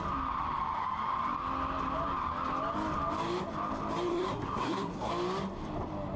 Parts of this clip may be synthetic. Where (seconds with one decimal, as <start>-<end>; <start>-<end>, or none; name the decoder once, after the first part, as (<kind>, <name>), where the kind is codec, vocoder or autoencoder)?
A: 4.1-5.1 (codec, SNAC)